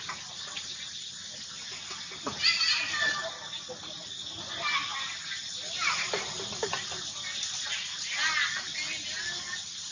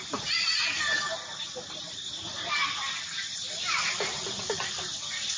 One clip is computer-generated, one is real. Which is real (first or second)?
first